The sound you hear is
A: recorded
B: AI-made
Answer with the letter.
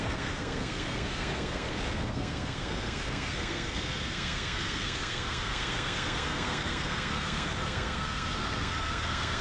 B